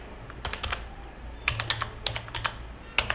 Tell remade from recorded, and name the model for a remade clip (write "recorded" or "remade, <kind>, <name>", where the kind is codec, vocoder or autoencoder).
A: recorded